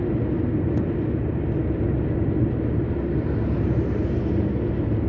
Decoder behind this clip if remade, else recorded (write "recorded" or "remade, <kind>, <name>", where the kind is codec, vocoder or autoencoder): recorded